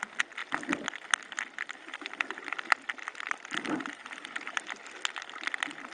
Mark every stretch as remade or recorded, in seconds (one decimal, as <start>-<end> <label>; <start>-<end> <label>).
0.0-5.9 recorded